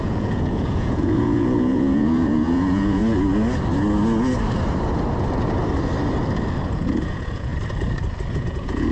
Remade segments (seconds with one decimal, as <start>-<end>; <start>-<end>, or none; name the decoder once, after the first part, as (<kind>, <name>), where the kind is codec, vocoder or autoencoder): 0.0-3.0 (vocoder, Vocos); 6.7-7.5; 8.3-8.9